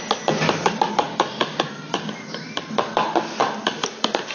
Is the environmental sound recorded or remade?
recorded